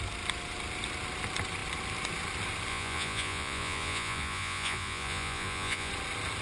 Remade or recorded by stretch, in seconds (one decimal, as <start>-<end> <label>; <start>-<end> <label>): 0.0-2.7 recorded; 2.7-5.9 remade; 5.9-6.4 recorded